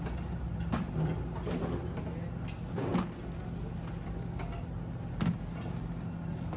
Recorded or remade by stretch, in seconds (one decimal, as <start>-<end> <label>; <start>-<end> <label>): 0.0-6.6 recorded